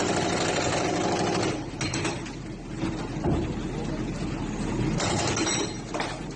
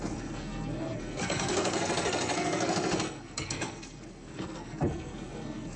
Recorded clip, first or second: first